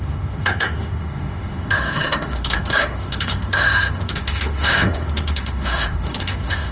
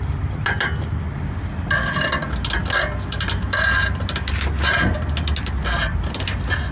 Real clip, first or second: second